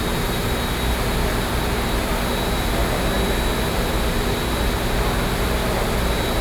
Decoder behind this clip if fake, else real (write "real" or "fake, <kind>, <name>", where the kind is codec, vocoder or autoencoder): real